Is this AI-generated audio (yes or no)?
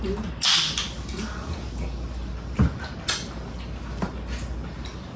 no